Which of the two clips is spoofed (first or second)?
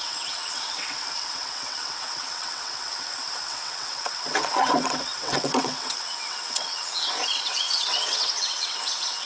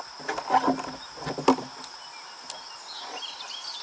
first